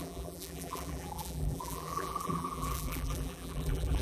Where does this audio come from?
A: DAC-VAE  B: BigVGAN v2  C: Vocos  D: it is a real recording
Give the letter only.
B